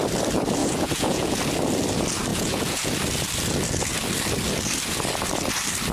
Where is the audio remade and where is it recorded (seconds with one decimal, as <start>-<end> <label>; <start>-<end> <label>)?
0.0-0.6 recorded; 0.6-1.4 remade; 1.4-2.3 recorded; 2.3-2.9 remade; 2.9-5.9 recorded